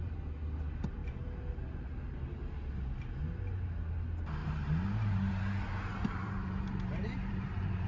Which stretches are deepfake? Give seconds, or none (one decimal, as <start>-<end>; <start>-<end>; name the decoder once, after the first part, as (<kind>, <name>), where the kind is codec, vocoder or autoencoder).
1.0-1.6 (vocoder, BigVGAN v2); 4.4-5.3; 5.9-7.9